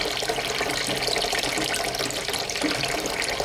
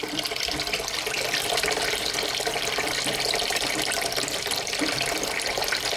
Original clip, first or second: first